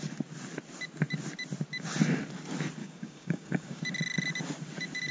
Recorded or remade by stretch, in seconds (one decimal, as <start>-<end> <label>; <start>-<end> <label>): 0.0-2.8 recorded; 2.8-3.8 remade; 3.8-5.1 recorded